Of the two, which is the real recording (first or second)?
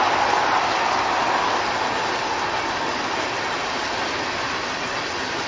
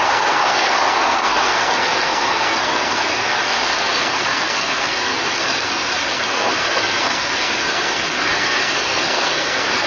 first